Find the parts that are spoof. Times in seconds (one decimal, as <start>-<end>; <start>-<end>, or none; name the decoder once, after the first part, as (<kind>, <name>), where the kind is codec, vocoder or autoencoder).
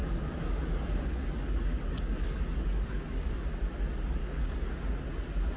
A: 0.0-3.3 (codec, DAC); 4.2-4.8